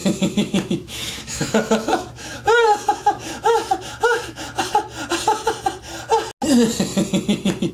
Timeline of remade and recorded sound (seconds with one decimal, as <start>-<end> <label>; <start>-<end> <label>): 0.0-4.6 remade; 4.6-7.7 recorded